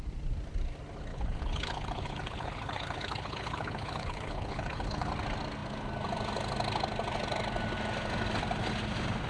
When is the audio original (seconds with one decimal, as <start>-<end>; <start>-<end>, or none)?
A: 0.0-1.1; 5.1-9.3